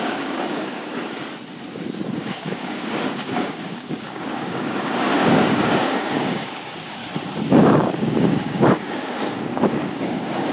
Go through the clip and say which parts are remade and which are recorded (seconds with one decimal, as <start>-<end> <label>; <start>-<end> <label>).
0.0-0.9 remade; 0.9-2.1 recorded; 2.1-7.0 remade; 7.0-7.5 recorded; 7.5-10.5 remade